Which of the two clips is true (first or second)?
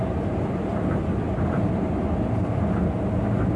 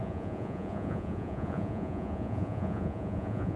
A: first